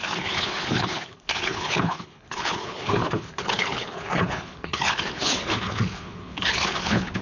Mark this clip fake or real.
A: fake